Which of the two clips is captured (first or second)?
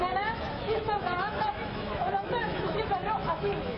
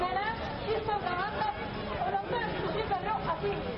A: second